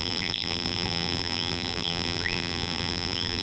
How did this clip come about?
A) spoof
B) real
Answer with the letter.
A